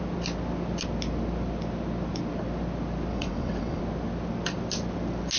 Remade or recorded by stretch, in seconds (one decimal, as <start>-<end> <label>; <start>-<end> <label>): 0.0-3.1 recorded; 3.1-3.8 remade; 3.8-5.4 recorded